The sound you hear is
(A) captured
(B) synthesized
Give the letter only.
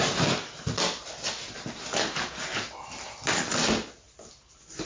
A